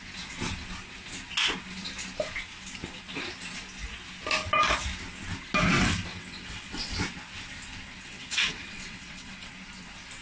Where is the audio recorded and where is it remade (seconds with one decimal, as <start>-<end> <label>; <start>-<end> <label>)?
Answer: 0.0-6.1 recorded; 6.1-7.0 remade; 7.0-8.1 recorded; 8.1-9.3 remade; 9.3-10.2 recorded